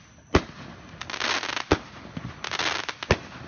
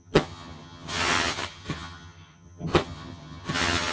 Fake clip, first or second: second